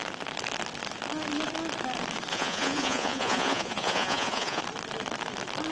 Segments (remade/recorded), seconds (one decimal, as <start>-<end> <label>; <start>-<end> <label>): 0.0-2.3 recorded; 2.3-4.6 remade; 4.6-5.7 recorded